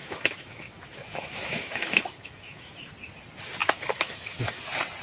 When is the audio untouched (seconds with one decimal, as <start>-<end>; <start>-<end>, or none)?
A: 2.9-3.6; 4.6-5.0